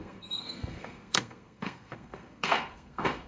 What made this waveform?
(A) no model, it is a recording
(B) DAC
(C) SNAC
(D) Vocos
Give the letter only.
C